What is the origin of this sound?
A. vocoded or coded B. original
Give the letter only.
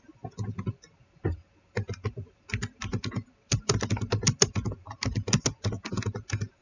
B